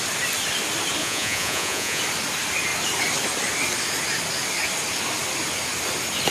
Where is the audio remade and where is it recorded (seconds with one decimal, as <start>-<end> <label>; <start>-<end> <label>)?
0.0-1.0 recorded; 1.0-2.0 remade; 2.0-6.3 recorded